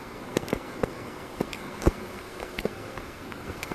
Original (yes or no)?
no